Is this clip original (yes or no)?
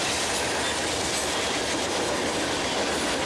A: yes